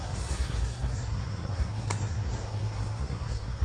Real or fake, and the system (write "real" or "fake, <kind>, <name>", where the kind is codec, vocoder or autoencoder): fake, codec, SNAC